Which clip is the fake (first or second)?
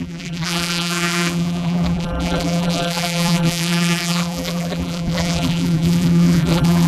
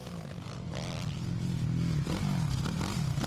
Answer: first